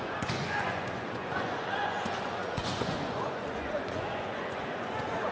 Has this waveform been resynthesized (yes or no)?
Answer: yes